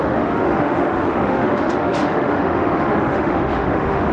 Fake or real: fake